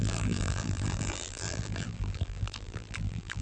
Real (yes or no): no